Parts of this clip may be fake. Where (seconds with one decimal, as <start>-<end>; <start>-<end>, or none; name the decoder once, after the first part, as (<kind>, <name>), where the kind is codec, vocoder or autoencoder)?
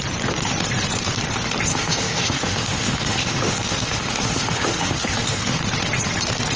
1.7-5.6 (autoencoder, DAC-VAE)